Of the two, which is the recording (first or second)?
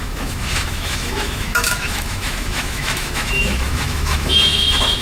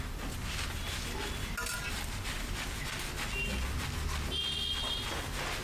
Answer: second